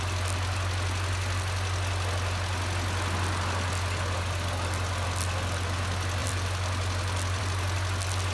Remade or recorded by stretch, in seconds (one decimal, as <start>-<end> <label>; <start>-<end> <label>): 0.0-6.2 recorded; 6.2-7.4 remade; 7.4-8.3 recorded